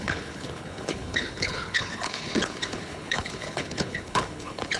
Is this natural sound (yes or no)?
no